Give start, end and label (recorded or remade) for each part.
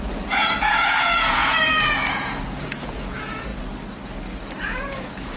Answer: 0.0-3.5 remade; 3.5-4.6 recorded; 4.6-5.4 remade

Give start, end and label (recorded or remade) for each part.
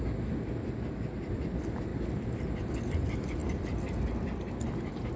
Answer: 0.0-5.2 recorded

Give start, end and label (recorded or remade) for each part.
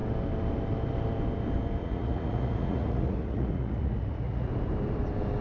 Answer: 0.0-1.8 recorded; 1.8-4.5 remade; 4.5-5.4 recorded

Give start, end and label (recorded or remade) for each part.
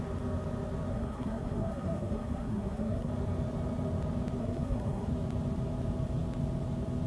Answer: 0.0-0.9 recorded; 0.9-3.1 remade; 3.1-4.4 recorded; 4.4-5.1 remade; 5.1-7.1 recorded